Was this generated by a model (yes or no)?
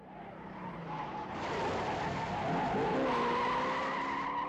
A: no